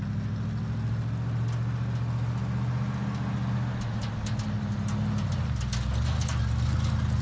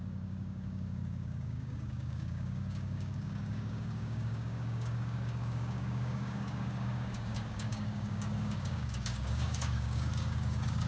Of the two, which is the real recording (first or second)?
first